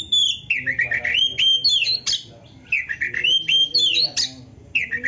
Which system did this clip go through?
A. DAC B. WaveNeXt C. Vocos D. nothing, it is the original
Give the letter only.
D